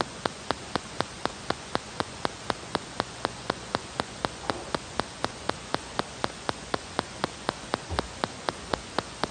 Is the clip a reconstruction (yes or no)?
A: yes